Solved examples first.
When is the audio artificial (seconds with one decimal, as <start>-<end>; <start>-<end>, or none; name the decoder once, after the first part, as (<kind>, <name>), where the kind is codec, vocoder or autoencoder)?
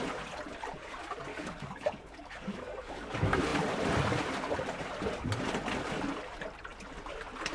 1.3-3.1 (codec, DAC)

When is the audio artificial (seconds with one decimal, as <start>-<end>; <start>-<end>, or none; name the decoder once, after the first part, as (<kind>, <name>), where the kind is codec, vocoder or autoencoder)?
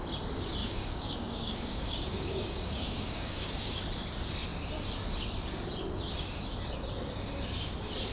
0.6-3.8 (codec, DAC)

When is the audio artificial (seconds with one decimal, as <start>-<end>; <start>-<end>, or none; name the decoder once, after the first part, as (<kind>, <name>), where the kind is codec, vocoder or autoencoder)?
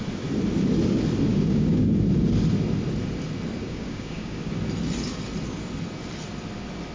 1.3-1.9 (codec, DAC); 3.6-4.5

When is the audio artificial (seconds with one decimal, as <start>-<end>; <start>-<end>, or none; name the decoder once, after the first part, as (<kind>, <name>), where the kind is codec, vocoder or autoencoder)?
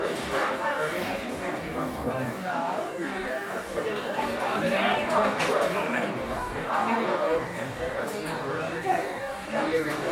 0.0-10.1 (codec, DAC)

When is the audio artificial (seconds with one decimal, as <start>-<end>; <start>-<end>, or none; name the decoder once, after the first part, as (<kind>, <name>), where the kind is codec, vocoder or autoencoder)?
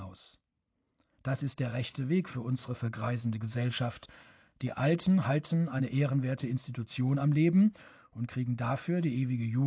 2.6-5.8 (codec, DAC)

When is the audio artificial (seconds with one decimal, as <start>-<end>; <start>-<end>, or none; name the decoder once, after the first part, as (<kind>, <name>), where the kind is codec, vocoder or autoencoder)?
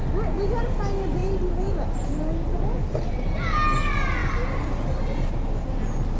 none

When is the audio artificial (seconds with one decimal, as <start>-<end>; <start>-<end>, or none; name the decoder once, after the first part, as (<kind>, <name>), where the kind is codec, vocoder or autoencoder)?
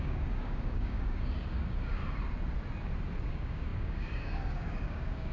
0.0-2.0 (codec, DAC); 3.2-5.3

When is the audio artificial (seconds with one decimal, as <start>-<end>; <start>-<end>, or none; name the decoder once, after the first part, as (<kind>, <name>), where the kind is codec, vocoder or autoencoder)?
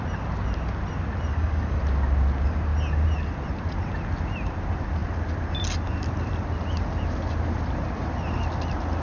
1.3-1.8 (codec, DAC)